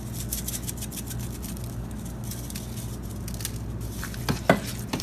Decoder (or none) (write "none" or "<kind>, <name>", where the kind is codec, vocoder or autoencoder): none